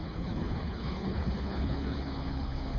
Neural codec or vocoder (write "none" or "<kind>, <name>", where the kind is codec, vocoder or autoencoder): codec, HILCodec